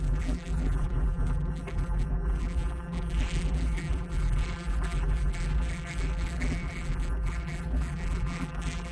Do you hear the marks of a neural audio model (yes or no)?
yes